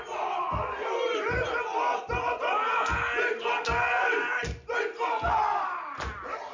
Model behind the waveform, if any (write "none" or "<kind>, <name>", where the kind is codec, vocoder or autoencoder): none